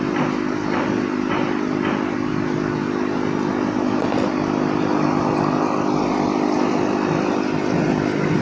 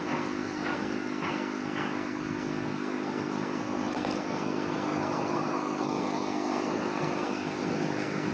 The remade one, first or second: second